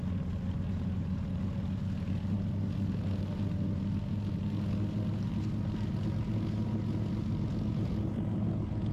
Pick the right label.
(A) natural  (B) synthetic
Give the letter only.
A